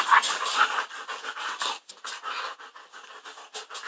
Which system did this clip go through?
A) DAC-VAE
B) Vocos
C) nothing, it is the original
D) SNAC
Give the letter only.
C